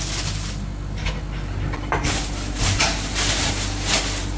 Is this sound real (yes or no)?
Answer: yes